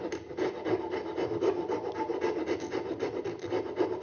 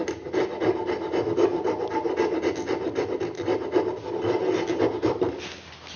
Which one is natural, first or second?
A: second